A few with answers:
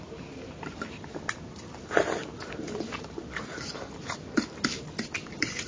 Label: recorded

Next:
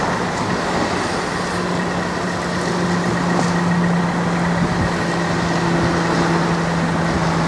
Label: recorded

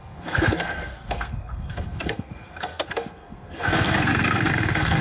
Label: remade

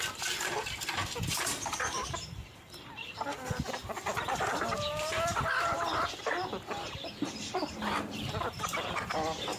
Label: remade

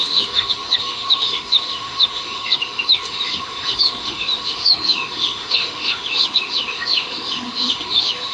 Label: remade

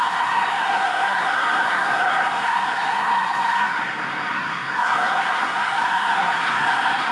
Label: remade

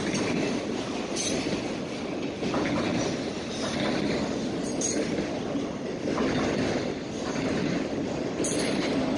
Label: recorded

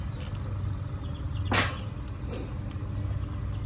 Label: recorded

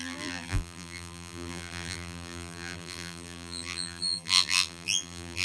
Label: remade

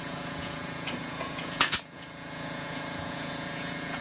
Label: remade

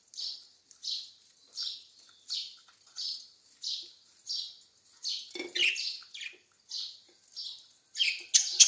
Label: recorded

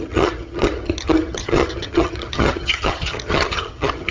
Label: remade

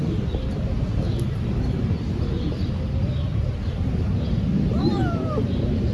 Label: remade